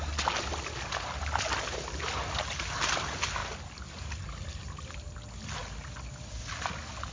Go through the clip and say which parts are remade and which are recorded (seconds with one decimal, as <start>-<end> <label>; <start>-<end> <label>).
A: 0.0-7.1 recorded